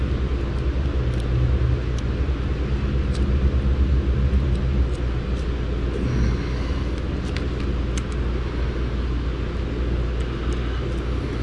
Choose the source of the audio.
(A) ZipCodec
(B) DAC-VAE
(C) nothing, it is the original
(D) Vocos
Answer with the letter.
C